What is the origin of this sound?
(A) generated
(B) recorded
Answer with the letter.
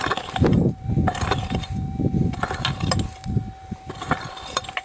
B